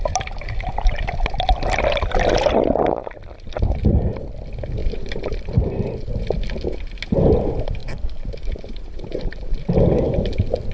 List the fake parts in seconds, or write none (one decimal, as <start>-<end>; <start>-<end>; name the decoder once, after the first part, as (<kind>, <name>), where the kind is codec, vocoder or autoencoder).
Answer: 4.8-6.1 (vocoder, BigVGAN v2); 7.8-9.6